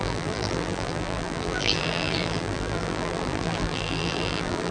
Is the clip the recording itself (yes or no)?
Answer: no